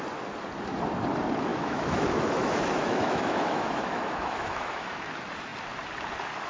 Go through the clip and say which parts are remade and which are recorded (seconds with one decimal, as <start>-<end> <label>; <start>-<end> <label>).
0.0-1.5 recorded; 1.5-5.1 remade; 5.1-6.5 recorded